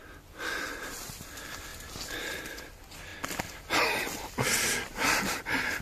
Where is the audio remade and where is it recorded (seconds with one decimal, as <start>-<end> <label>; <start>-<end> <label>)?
0.0-5.8 recorded